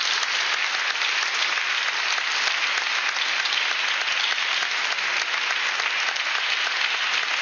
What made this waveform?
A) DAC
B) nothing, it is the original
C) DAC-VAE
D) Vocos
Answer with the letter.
B